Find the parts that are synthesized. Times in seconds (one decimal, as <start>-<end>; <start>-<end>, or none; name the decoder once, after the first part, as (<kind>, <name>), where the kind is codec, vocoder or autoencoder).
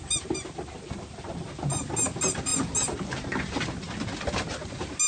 none